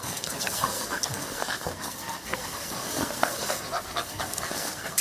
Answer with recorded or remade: remade